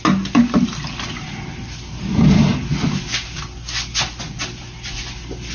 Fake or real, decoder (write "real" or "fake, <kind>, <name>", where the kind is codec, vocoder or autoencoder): real